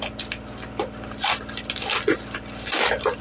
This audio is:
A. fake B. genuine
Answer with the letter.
B